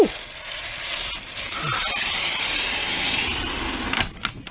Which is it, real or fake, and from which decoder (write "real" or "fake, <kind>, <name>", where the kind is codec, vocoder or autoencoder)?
real